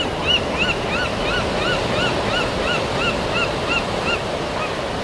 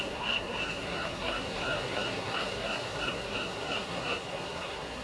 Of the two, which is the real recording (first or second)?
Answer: first